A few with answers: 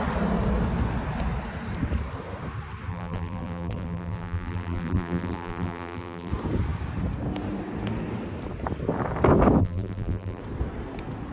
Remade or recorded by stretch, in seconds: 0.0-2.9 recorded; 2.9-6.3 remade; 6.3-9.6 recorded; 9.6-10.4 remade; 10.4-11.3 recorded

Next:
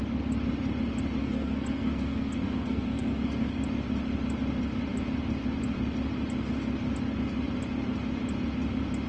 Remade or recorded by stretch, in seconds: 0.0-1.2 recorded; 1.2-3.6 remade; 3.6-9.1 recorded